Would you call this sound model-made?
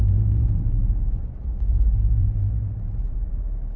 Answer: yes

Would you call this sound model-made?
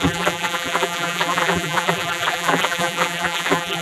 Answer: yes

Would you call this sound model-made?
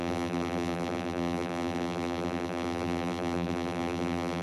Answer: yes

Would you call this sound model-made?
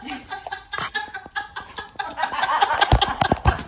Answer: no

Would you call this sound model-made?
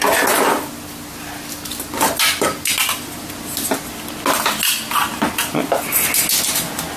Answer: no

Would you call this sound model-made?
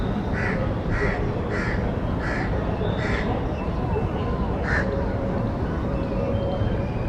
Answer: yes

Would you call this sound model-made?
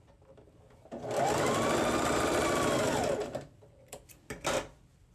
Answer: yes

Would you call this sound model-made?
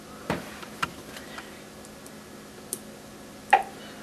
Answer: no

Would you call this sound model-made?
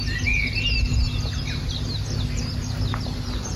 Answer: no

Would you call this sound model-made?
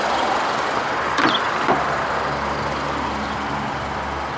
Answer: no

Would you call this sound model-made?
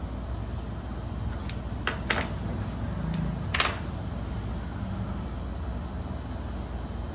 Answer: no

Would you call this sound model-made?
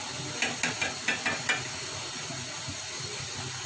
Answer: no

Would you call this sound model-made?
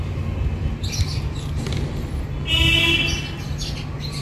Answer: no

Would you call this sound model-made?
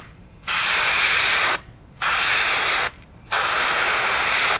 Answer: yes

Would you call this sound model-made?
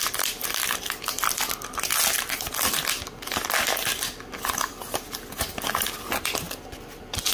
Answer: no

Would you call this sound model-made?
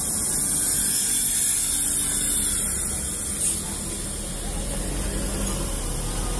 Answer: no